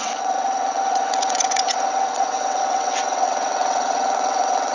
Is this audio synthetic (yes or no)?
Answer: yes